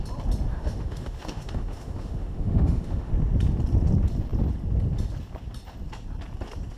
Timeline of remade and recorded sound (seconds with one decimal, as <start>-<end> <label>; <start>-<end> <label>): 0.0-0.5 recorded; 0.5-3.1 remade; 3.1-6.8 recorded